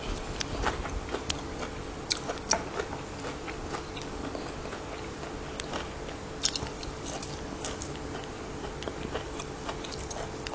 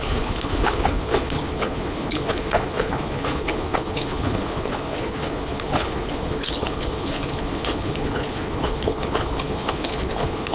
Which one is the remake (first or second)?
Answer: second